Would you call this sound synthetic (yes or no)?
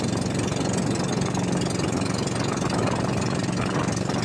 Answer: no